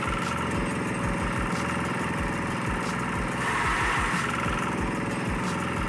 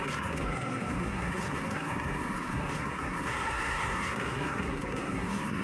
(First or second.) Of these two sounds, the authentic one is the first